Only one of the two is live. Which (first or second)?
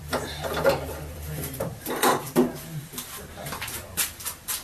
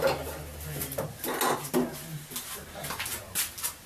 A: second